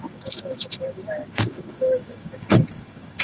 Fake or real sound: fake